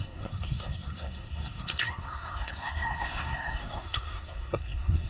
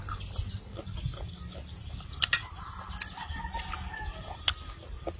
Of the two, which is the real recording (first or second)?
second